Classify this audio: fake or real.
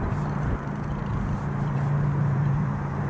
fake